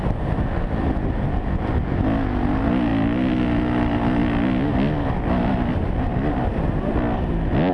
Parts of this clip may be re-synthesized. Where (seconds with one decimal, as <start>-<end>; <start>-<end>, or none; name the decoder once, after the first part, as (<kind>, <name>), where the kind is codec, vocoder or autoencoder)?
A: none